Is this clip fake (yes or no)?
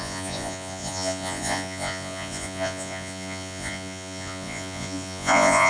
yes